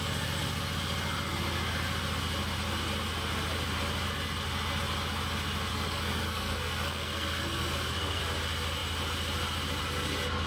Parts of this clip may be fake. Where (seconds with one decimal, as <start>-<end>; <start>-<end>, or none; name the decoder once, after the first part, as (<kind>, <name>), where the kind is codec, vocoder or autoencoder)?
5.7-8.2 (codec, SNAC)